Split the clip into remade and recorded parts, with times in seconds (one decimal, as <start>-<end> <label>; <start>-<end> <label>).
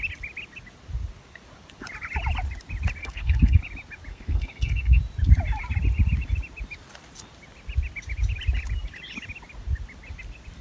0.0-3.0 recorded; 3.0-3.6 remade; 3.6-4.1 recorded; 4.1-5.0 remade; 5.0-10.6 recorded